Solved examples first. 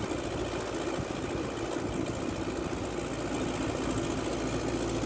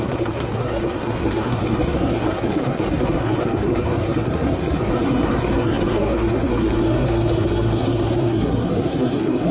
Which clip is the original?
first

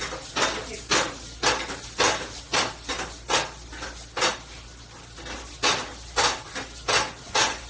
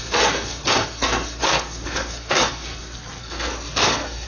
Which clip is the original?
first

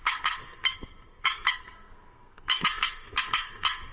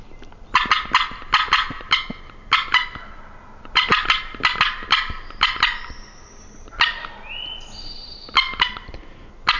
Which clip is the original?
second